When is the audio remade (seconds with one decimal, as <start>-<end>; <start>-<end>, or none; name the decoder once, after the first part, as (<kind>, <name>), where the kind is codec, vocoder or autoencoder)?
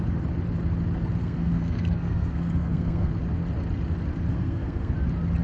1.2-3.1 (codec, SNAC); 4.3-4.9